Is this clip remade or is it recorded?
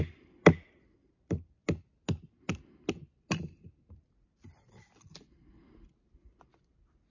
recorded